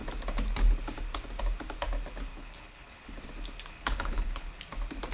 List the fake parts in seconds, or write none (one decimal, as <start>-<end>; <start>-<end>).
2.3-3.2; 3.7-4.6